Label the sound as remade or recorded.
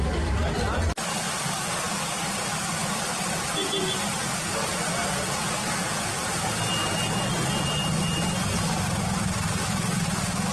recorded